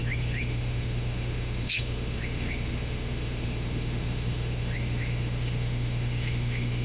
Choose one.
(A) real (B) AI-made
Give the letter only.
B